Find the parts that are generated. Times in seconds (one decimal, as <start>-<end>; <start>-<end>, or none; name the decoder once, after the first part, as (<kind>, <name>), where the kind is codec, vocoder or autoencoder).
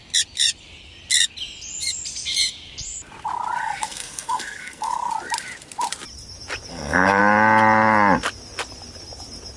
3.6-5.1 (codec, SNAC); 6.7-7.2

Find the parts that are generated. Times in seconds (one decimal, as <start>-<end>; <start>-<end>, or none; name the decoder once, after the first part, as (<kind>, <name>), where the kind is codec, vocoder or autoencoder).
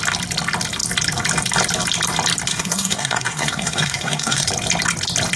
2.5-4.5 (codec, SNAC)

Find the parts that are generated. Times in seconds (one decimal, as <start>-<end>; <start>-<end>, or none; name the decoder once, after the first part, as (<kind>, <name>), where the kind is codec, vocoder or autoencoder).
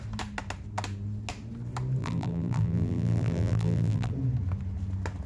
2.0-4.1 (vocoder, BigVGAN v2)